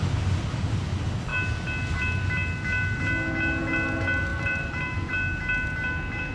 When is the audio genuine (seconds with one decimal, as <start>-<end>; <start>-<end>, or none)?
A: 0.0-4.3; 5.1-6.3